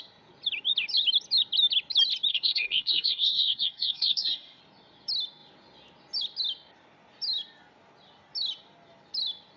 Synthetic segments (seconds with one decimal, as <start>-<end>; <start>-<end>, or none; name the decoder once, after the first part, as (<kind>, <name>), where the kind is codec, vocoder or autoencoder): 2.3-4.6 (codec, SNAC)